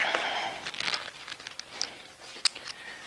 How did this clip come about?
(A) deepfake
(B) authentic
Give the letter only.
B